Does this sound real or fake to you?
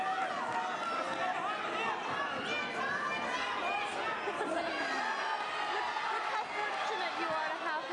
real